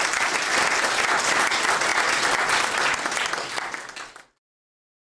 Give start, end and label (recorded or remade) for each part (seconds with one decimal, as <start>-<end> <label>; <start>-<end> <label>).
0.0-5.2 recorded